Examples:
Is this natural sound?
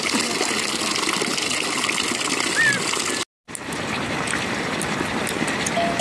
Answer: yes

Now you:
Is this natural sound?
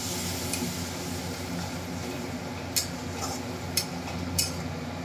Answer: yes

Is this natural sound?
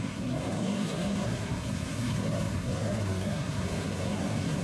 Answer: no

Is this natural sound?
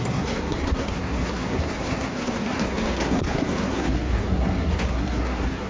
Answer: no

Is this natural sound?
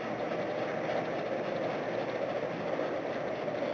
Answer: yes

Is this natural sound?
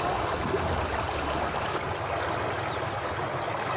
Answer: yes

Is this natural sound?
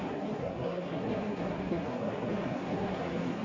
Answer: no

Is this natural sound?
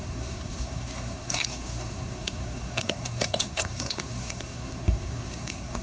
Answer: no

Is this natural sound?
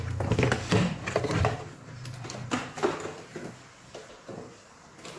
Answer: yes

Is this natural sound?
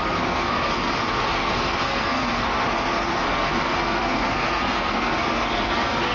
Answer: no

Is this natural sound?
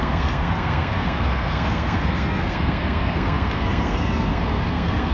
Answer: no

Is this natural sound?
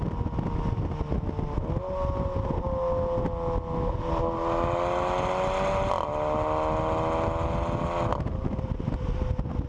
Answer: yes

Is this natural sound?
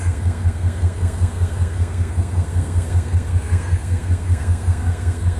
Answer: no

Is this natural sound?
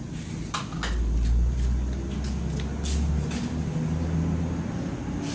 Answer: yes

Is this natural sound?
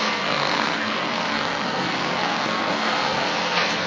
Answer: no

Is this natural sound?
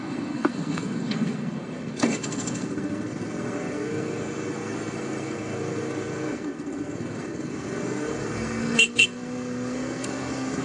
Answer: no